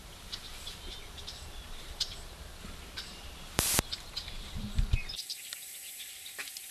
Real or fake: fake